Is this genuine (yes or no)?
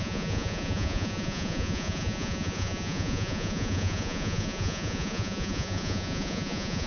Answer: no